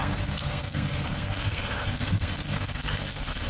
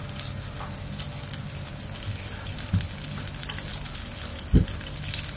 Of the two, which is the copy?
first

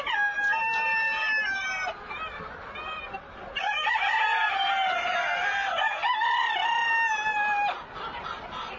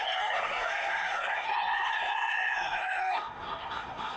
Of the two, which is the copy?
second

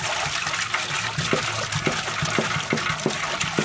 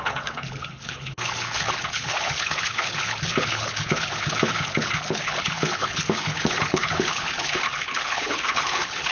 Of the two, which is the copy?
second